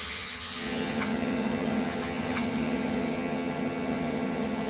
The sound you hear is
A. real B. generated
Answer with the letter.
B